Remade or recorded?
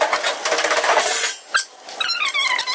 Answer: recorded